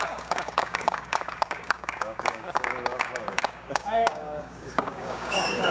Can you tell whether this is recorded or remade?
remade